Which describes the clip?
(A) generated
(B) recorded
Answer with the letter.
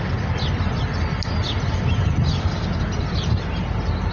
B